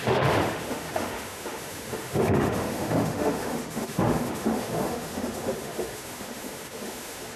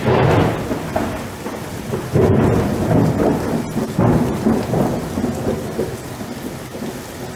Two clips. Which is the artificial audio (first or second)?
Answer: first